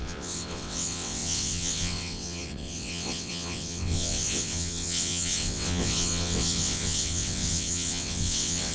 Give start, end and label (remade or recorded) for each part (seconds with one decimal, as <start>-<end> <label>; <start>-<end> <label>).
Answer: 0.0-8.7 remade